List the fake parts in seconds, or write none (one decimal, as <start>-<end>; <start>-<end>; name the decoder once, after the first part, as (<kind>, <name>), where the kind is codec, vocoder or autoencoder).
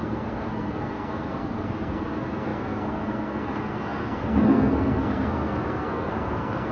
0.0-6.7 (codec, SNAC)